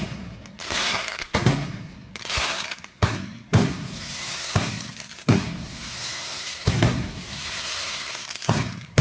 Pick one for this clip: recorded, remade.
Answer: remade